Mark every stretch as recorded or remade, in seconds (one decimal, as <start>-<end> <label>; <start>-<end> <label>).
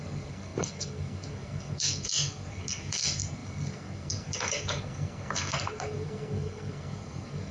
0.0-7.5 remade